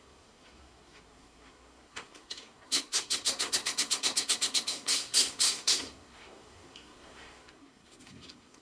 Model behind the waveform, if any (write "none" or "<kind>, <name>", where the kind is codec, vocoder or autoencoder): codec, SNAC